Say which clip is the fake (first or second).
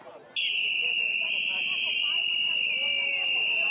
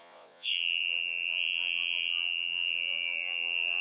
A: second